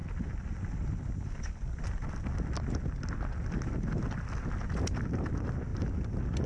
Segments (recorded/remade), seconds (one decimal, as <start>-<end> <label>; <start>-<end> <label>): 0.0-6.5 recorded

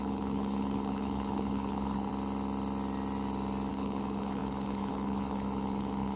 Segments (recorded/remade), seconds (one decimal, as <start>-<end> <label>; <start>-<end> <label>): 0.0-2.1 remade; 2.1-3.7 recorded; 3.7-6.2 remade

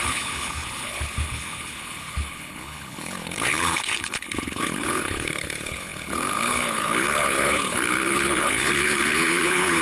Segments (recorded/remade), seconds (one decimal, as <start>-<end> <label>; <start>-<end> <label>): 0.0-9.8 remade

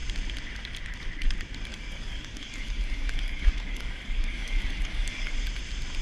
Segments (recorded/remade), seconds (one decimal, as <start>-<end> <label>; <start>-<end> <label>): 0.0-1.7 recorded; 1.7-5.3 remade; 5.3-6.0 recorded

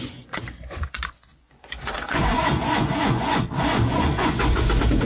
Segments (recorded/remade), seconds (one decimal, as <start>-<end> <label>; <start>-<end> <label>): 0.0-5.0 remade

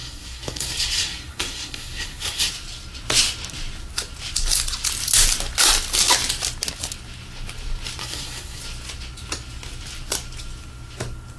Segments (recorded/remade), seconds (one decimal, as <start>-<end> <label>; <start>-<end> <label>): 0.0-2.5 remade; 2.5-8.0 recorded; 8.0-8.6 remade; 8.6-11.4 recorded

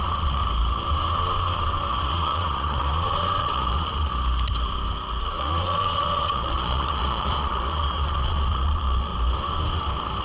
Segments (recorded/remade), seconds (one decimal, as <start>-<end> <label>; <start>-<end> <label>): 0.0-0.4 remade; 0.4-1.9 recorded; 1.9-4.1 remade; 4.1-5.2 recorded; 5.2-9.1 remade; 9.1-10.2 recorded

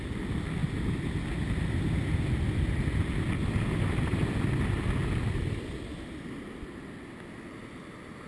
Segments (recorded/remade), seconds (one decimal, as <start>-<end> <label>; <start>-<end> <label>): 0.0-8.3 recorded